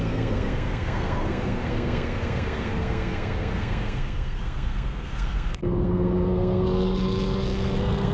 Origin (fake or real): fake